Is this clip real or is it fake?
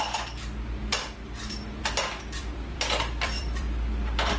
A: fake